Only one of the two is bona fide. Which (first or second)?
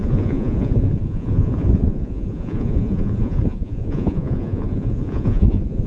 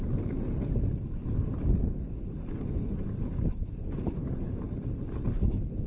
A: second